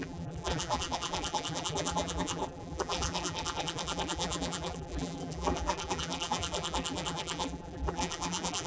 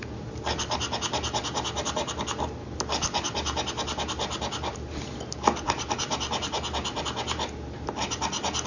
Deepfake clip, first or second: first